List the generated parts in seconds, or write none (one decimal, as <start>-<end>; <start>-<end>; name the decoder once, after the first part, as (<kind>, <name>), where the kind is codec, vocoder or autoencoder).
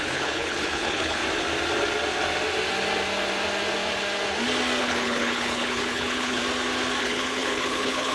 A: 0.0-1.2 (codec, HILCodec); 4.8-6.4; 7.0-8.1